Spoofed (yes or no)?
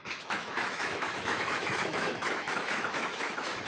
yes